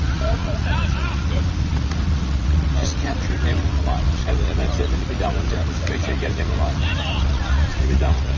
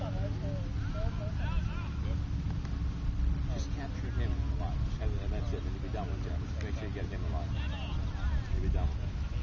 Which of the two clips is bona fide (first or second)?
second